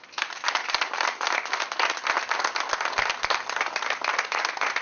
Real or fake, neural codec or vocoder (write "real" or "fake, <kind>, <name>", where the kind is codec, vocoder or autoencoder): real